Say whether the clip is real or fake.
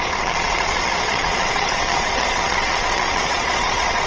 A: fake